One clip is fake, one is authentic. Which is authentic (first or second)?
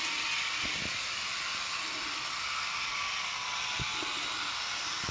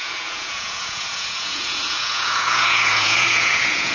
first